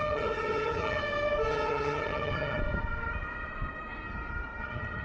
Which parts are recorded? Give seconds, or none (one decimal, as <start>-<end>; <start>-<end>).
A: 1.0-1.5; 2.6-4.6